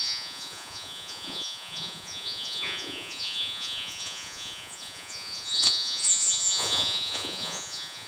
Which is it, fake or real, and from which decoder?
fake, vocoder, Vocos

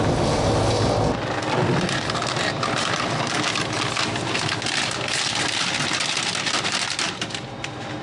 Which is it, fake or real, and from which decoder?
real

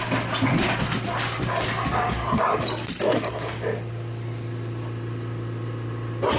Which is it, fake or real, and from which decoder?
real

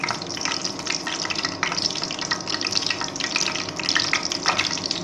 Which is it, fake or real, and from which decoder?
real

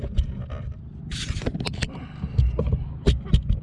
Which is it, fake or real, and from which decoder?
real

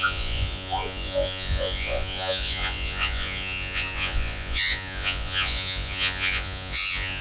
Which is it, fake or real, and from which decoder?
fake, vocoder, Vocos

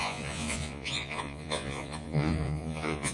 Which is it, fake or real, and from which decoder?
fake, vocoder, Vocos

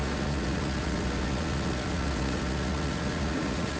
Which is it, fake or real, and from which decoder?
fake, vocoder, Vocos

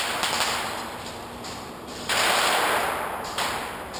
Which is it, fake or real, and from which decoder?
real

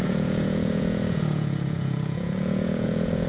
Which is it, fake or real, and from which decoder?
fake, vocoder, Vocos